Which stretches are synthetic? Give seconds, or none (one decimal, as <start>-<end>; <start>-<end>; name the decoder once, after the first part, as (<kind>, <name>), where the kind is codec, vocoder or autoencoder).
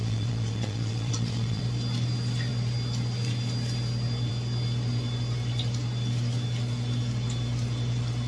0.0-1.6 (vocoder, Vocos)